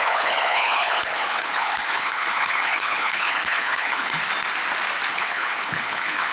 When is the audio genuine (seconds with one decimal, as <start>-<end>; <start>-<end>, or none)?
4.2-5.1